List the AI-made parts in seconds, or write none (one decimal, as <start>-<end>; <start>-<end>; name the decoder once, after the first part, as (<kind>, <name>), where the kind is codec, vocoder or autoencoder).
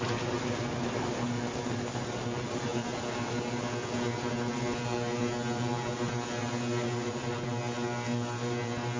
none